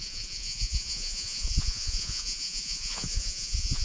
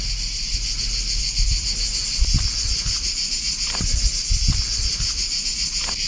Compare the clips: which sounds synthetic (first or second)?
first